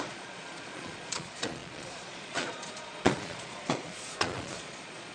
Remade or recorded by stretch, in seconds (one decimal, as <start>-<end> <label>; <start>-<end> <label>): 0.0-5.1 remade